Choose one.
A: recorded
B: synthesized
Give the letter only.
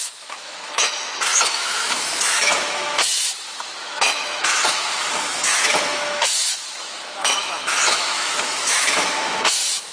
B